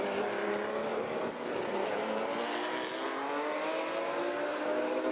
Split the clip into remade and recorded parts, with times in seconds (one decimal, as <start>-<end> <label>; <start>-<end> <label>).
0.0-5.1 recorded